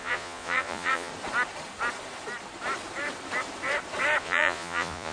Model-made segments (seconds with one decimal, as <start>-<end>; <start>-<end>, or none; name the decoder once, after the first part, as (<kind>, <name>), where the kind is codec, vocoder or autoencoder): 0.0-1.1 (vocoder, Vocos); 4.2-5.1